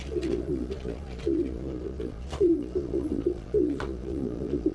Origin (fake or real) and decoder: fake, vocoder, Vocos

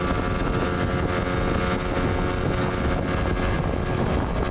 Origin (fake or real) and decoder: real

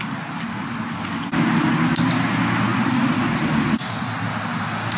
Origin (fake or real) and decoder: real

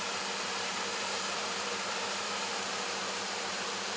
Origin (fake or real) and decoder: fake, vocoder, BigVGAN v2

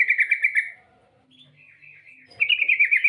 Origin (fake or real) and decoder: real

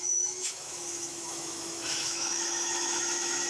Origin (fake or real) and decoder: fake, autoencoder, DAC-VAE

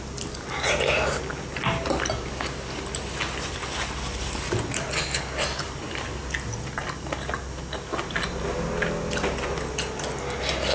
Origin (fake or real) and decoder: real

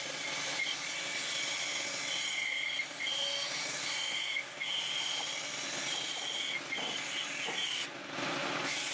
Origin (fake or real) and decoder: real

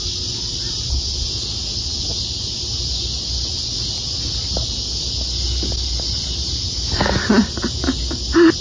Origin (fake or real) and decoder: real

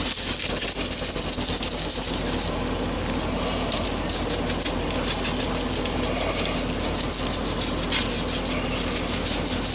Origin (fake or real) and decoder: real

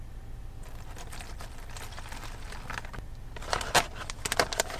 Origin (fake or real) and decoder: real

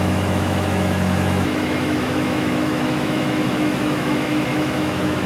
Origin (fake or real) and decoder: fake, autoencoder, DAC-VAE